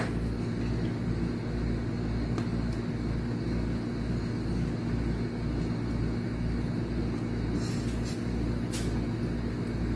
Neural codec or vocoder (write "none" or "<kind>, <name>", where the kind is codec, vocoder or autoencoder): none